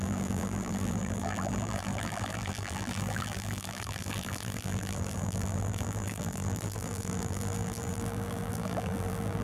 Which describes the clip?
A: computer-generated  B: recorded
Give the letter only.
A